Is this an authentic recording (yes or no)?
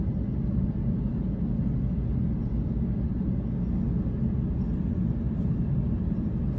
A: yes